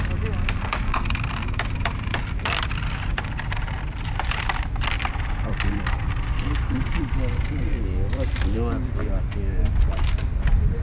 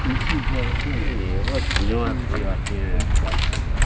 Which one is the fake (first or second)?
first